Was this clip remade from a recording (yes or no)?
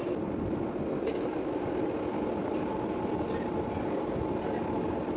no